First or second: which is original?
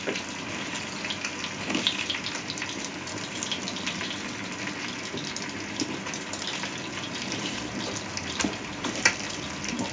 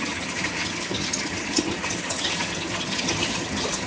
first